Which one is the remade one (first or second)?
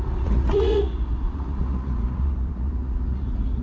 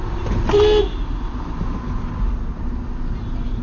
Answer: first